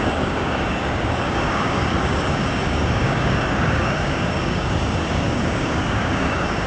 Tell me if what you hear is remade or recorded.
remade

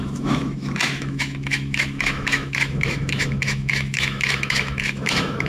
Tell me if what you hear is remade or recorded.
remade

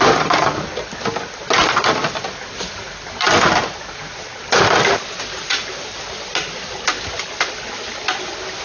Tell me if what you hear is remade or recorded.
recorded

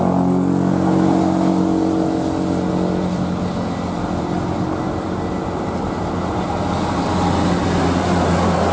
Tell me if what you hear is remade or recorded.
recorded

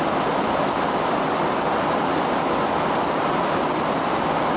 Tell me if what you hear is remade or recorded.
recorded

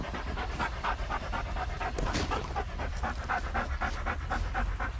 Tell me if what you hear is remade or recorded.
recorded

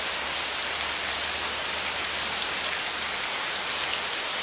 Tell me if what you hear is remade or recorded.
recorded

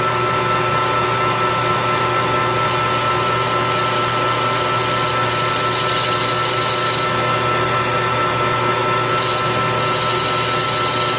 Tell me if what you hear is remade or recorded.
recorded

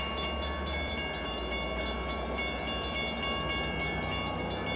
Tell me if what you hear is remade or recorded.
recorded